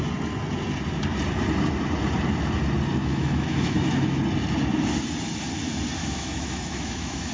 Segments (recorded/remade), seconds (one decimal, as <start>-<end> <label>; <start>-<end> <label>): 0.0-3.0 recorded; 3.0-4.2 remade; 4.2-6.0 recorded; 6.0-7.3 remade